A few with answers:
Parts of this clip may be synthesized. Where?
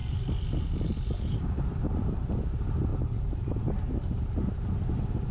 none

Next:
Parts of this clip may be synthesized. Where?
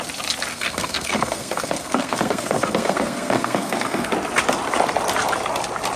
0.5-4.1 (codec, SNAC)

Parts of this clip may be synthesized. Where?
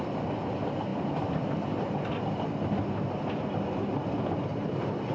none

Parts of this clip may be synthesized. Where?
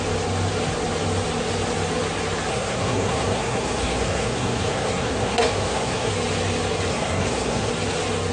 2.5-6.1 (codec, SNAC); 6.9-7.7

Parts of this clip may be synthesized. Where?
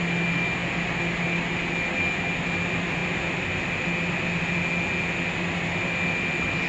none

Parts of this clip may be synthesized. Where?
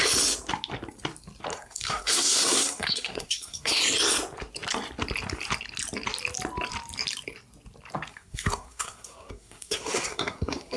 1.5-3.8 (codec, SNAC); 8.1-10.8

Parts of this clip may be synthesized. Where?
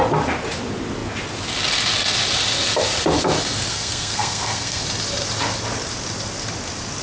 3.7-4.8 (codec, SNAC)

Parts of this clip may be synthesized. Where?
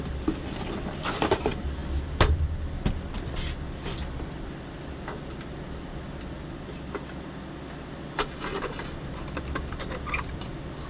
none